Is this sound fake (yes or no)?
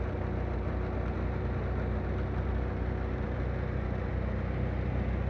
no